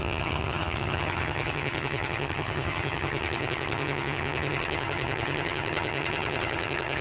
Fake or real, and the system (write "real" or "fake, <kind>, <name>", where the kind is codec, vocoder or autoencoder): fake, vocoder, HiFi-GAN